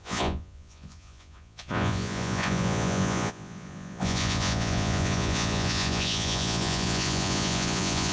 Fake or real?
fake